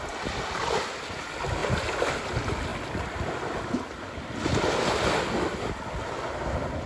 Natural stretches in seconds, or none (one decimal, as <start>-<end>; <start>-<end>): 0.0-6.9